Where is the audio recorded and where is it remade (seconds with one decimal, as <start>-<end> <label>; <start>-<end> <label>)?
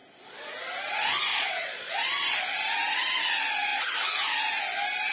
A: 0.0-1.3 recorded; 1.3-1.9 remade; 1.9-5.1 recorded